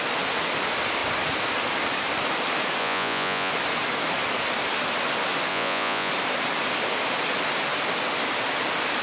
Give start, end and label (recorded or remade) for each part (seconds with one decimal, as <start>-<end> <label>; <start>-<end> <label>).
0.0-2.8 recorded; 2.8-3.5 remade; 3.5-5.5 recorded; 5.5-6.1 remade; 6.1-9.0 recorded